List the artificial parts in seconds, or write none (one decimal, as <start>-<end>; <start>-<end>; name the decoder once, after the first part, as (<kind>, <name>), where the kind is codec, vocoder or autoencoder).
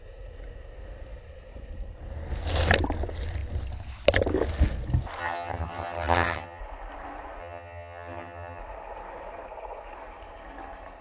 5.2-6.6 (vocoder, HiFi-GAN); 7.4-8.6